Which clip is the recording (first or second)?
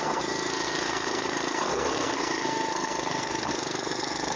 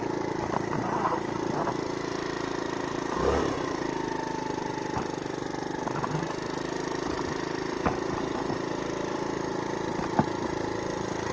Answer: second